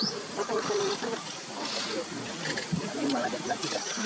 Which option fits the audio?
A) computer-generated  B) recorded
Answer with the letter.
A